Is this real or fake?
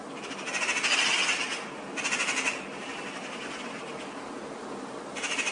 real